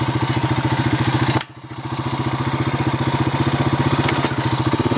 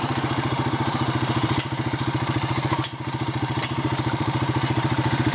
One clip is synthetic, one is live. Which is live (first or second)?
first